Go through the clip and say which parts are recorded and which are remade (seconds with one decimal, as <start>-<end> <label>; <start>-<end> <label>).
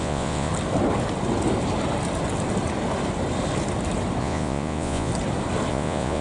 0.0-0.5 remade; 0.5-4.2 recorded; 4.2-5.1 remade; 5.1-5.7 recorded; 5.7-6.2 remade